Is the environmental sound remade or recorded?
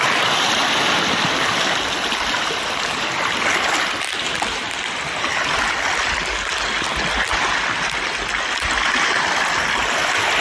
recorded